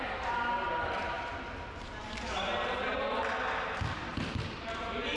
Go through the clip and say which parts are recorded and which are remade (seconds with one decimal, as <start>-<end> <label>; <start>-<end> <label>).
0.0-5.2 recorded